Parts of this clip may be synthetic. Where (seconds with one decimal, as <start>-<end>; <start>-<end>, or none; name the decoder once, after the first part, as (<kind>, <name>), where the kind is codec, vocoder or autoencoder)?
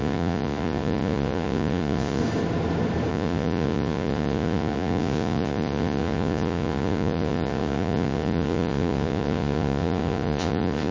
0.0-2.2 (vocoder, Vocos); 3.1-10.9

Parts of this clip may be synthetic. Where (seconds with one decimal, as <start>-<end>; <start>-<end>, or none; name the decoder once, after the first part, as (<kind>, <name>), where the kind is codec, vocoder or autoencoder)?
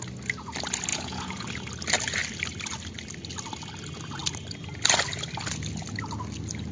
0.9-1.5 (vocoder, Vocos)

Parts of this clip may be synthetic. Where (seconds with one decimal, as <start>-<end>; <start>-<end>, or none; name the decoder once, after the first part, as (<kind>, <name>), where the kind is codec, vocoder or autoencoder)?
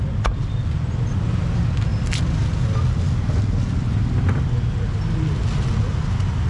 none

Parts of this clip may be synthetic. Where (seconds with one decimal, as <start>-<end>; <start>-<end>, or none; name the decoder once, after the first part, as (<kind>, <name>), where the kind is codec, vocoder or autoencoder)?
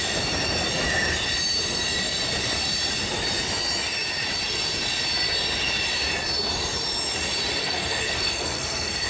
7.6-9.1 (codec, SNAC)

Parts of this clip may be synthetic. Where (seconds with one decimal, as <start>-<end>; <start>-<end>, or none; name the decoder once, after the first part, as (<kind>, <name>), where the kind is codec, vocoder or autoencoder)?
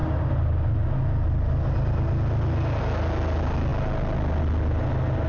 none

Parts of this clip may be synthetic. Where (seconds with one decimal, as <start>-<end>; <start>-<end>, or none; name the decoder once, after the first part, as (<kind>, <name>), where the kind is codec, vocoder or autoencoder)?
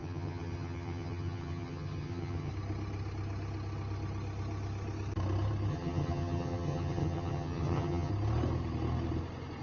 0.0-2.5 (vocoder, HiFi-GAN); 5.7-8.1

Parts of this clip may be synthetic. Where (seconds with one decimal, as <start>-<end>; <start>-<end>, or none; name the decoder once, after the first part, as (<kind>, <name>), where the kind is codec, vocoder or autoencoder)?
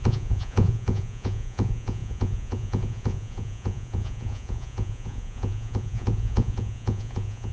0.0-7.5 (vocoder, Vocos)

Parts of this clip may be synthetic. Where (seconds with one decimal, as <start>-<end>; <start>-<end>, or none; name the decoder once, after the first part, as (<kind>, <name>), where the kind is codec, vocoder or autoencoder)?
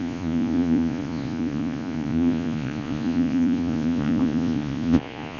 0.0-5.4 (vocoder, Vocos)